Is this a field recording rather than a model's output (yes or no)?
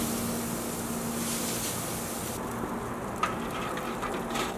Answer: yes